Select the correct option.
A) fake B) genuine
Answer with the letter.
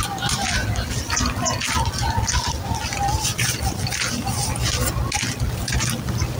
B